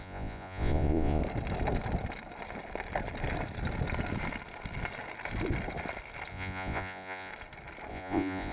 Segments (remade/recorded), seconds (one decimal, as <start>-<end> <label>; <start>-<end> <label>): 0.0-1.2 remade; 1.2-6.3 recorded; 6.3-7.3 remade; 7.3-7.9 recorded; 7.9-8.5 remade

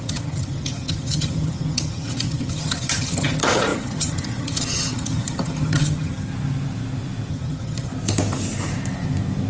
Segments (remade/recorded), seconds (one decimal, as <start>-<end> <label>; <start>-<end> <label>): 0.0-6.3 remade; 6.3-7.3 recorded; 7.3-7.9 remade; 7.9-9.5 recorded

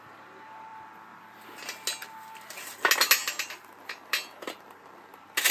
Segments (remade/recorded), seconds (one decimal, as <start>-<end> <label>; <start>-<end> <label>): 0.0-5.5 recorded

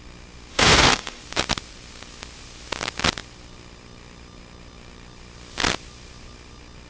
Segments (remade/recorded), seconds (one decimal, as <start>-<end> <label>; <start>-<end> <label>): 0.0-0.5 recorded; 0.5-1.2 remade; 1.2-6.9 recorded